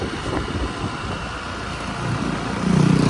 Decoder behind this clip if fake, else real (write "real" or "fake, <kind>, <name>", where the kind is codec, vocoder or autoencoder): real